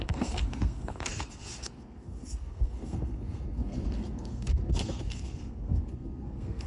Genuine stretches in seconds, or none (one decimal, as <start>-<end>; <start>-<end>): none